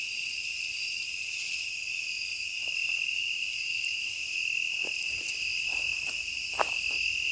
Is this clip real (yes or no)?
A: yes